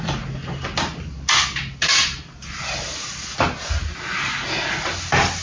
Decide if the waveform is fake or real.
real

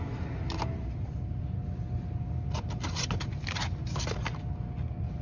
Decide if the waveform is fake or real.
real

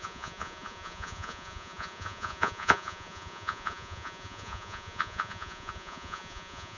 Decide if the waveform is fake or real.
fake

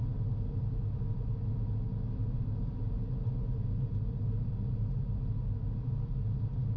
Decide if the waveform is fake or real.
real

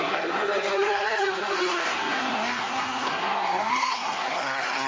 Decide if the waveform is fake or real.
fake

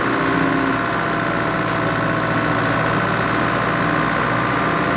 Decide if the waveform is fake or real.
real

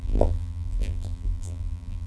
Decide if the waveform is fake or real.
fake